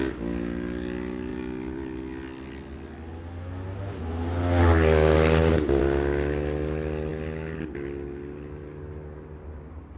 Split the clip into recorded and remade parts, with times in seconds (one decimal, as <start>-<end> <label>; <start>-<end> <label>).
0.0-10.0 recorded

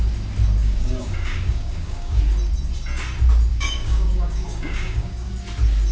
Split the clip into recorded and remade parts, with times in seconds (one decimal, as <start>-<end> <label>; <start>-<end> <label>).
0.0-0.6 recorded; 0.6-2.2 remade; 2.2-3.5 recorded; 3.5-5.3 remade; 5.3-5.9 recorded